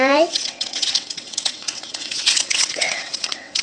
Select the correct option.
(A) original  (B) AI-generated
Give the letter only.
B